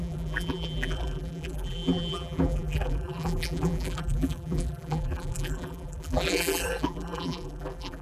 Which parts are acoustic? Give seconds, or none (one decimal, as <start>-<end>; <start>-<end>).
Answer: none